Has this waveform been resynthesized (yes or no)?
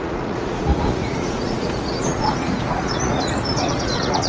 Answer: yes